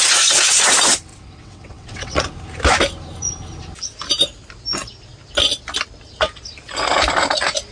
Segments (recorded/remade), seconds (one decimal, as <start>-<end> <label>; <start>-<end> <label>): 0.0-1.1 recorded; 1.1-2.3 remade; 2.3-7.7 recorded